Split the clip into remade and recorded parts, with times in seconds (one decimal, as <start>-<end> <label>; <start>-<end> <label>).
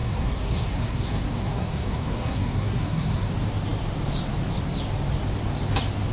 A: 0.0-3.3 remade; 3.3-6.1 recorded